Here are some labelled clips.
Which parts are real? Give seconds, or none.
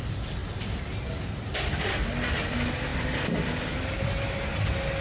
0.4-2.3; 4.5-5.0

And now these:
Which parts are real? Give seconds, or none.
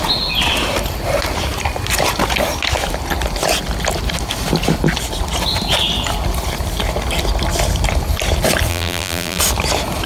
0.0-8.7; 9.4-10.1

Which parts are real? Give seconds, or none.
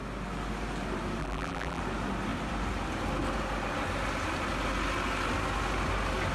0.0-1.2; 1.8-6.3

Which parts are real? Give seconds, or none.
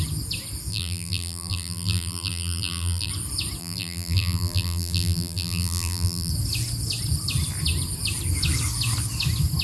0.0-0.7; 3.1-3.6; 6.3-9.6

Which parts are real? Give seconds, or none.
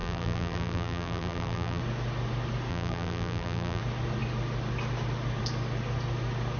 1.8-2.7; 3.8-6.6